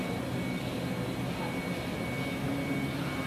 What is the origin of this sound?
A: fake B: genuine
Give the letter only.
B